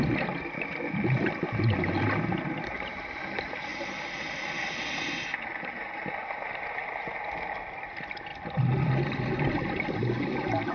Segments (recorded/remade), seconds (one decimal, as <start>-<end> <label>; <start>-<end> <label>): 0.0-3.7 recorded; 3.7-4.2 remade; 4.2-8.3 recorded; 8.3-9.8 remade; 9.8-10.7 recorded